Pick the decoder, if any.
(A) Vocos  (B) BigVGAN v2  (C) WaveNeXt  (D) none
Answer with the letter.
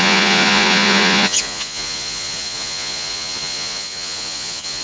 A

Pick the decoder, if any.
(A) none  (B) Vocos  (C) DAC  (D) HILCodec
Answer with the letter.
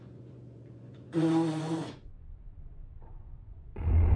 B